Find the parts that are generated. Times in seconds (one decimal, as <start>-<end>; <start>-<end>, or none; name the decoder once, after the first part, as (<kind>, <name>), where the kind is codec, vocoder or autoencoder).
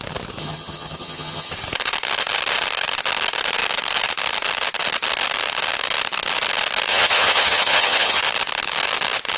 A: 0.4-1.5 (vocoder, HiFi-GAN); 6.9-8.2